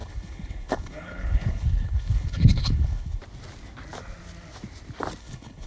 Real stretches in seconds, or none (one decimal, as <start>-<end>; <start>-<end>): 3.2-5.2

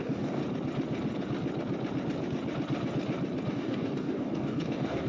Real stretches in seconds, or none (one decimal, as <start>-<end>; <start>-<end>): 0.4-3.5

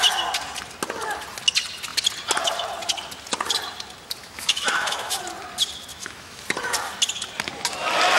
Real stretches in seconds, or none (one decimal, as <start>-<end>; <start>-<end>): 0.0-4.2; 5.2-5.9; 6.4-8.2